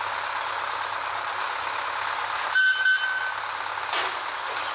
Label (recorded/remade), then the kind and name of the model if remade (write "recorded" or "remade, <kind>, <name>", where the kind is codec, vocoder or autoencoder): recorded